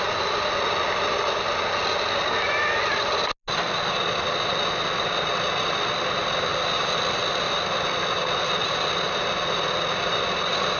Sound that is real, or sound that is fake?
real